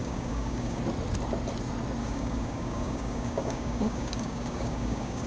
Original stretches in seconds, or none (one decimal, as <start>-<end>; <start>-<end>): 0.8-2.0